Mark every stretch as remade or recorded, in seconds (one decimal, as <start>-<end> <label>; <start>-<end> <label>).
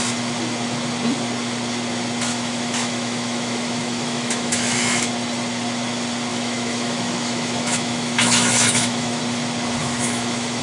0.0-2.3 recorded; 2.3-5.1 remade; 5.1-6.3 recorded; 6.3-9.2 remade; 9.2-9.8 recorded; 9.8-10.6 remade